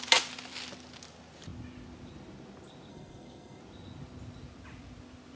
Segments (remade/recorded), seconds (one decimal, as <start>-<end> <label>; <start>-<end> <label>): 0.0-2.9 recorded; 2.9-3.6 remade; 3.6-5.4 recorded